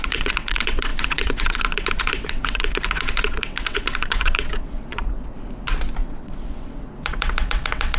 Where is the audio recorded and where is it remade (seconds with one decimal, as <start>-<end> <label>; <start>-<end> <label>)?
0.0-5.3 remade; 5.3-6.0 recorded; 6.0-8.0 remade